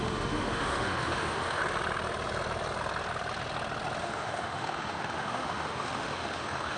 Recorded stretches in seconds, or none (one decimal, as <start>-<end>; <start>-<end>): 1.6-4.0